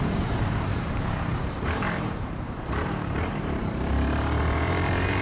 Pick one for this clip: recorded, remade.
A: remade